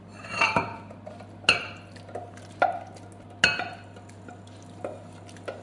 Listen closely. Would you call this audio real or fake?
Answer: real